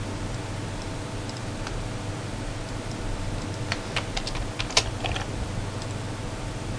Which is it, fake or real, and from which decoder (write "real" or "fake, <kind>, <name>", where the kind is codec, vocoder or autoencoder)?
real